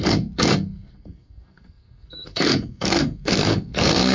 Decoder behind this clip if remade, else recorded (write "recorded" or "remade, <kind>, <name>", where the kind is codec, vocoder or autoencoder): remade, codec, SNAC